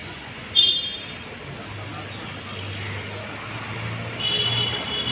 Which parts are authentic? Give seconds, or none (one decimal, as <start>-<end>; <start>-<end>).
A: 0.7-5.1